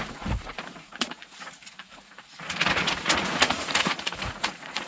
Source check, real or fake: fake